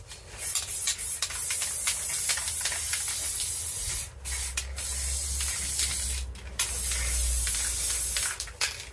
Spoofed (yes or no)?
no